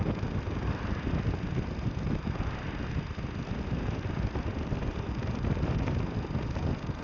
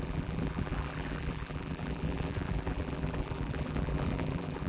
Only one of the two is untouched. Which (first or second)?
first